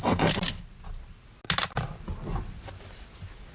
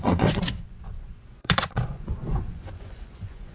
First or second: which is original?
first